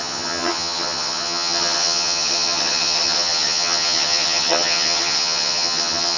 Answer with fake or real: fake